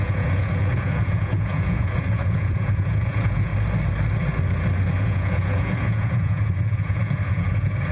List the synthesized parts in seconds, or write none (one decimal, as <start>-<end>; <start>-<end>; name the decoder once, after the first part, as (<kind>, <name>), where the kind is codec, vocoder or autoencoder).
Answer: 0.0-3.5 (vocoder, Vocos); 5.0-7.9